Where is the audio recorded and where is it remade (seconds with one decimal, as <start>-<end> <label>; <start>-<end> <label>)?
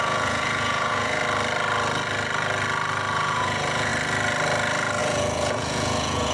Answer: 0.0-1.2 remade; 1.2-3.1 recorded; 3.1-3.9 remade; 3.9-5.0 recorded; 5.0-6.3 remade